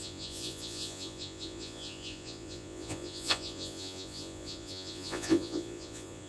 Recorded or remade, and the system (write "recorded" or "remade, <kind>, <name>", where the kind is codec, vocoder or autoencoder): remade, vocoder, Vocos